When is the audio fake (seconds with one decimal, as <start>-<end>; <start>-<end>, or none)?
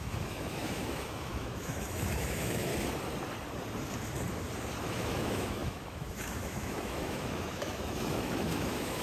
0.0-2.7; 4.8-9.0